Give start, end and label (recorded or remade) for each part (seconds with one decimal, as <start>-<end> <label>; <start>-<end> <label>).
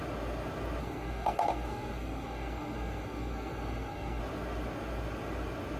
0.0-0.8 recorded; 0.8-4.2 remade; 4.2-5.8 recorded